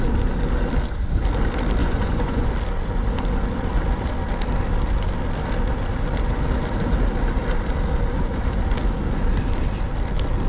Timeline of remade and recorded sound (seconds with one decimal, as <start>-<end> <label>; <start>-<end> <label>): 0.0-1.8 recorded; 1.8-2.5 remade; 2.5-10.5 recorded